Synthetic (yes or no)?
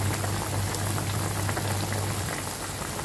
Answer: no